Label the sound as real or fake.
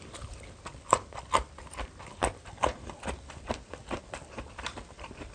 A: fake